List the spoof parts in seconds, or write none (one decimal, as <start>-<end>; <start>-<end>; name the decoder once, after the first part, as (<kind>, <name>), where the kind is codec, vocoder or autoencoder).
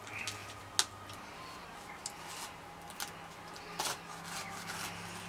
none